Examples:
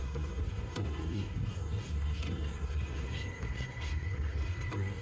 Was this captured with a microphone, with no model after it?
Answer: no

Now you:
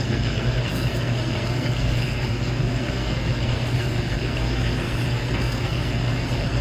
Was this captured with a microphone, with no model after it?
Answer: no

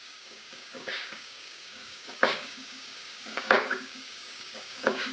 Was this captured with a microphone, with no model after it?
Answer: no